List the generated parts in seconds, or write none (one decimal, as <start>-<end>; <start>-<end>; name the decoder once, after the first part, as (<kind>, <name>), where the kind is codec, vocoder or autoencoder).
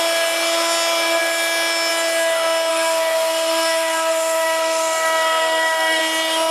2.7-6.0 (codec, SNAC)